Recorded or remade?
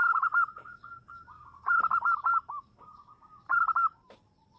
recorded